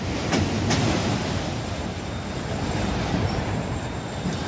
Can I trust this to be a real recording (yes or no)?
no